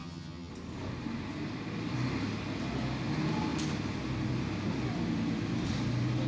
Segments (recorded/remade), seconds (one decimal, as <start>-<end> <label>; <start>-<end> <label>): 0.0-0.5 remade; 0.5-6.3 recorded